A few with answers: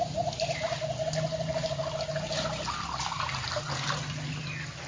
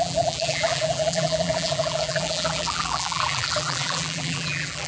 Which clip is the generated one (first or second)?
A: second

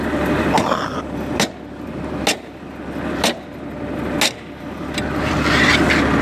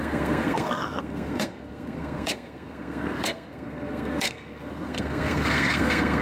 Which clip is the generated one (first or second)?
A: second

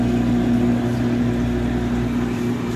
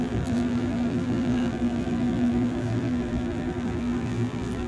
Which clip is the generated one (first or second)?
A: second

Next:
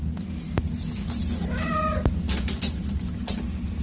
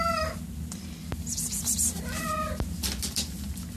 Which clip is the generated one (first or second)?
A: second